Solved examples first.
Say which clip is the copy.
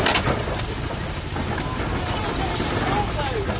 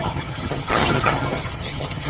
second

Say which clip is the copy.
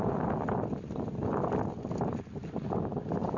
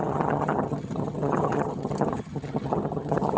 second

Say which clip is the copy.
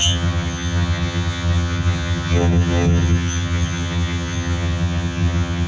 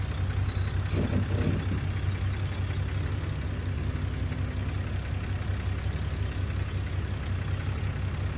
first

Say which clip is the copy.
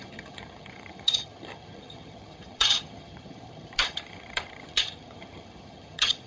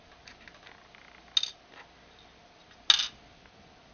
first